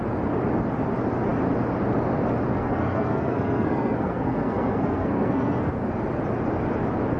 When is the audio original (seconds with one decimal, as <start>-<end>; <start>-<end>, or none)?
0.0-2.5; 5.8-7.2